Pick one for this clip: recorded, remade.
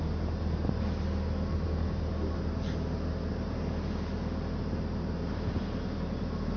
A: recorded